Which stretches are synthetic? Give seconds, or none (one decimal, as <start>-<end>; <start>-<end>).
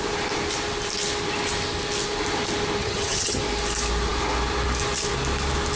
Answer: 2.8-3.4